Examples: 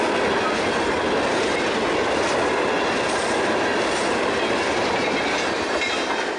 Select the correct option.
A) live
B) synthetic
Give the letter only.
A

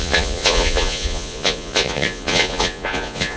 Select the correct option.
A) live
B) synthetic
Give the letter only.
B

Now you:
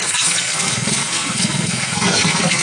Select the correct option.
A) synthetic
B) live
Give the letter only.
A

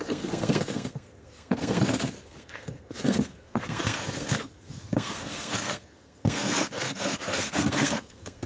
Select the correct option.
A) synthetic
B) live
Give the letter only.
A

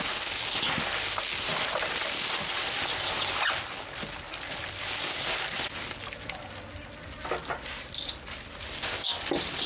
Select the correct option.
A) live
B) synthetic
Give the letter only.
A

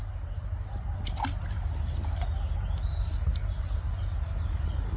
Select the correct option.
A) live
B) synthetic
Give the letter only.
A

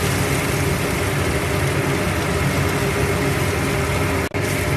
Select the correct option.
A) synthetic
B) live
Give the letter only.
B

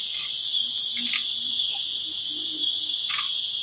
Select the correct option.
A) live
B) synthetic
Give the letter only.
A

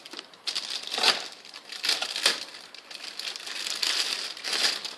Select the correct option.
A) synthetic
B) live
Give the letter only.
B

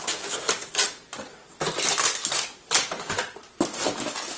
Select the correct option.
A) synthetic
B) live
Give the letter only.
B